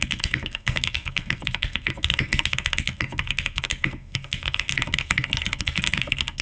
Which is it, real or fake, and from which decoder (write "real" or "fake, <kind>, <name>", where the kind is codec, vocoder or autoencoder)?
fake, codec, SNAC